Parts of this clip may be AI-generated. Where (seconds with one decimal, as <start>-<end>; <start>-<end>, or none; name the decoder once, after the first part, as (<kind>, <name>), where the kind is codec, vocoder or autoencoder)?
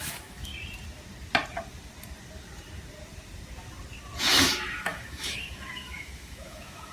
0.0-0.5 (autoencoder, DAC-VAE); 4.2-6.9